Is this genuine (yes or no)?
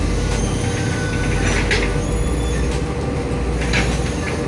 yes